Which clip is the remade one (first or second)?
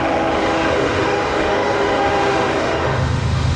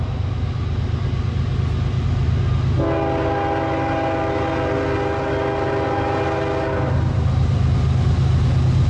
first